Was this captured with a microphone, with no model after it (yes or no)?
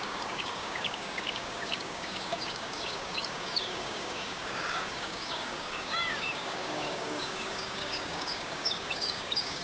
no